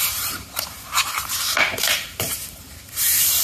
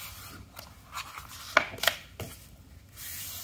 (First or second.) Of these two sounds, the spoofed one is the first